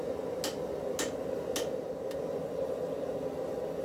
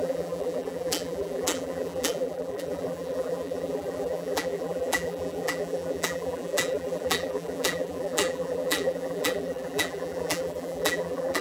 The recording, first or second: first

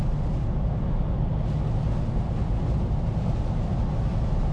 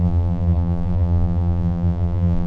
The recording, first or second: first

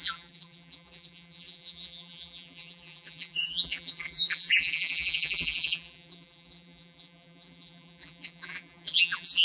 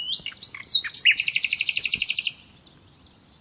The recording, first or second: second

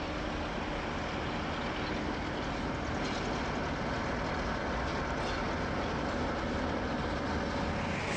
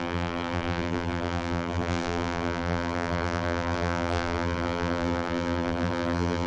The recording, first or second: first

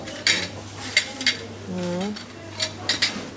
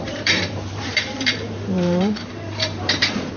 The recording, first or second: first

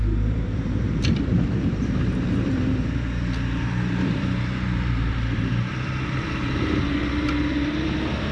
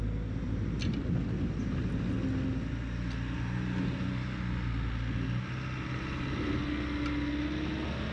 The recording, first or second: second